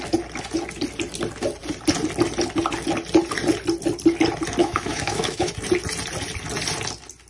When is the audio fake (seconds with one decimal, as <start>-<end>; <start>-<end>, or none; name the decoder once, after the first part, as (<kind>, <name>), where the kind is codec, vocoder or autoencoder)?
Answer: 4.6-5.5 (autoencoder, DAC-VAE)